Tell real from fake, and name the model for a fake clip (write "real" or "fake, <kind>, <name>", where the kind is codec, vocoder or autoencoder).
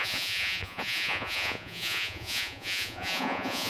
fake, vocoder, Vocos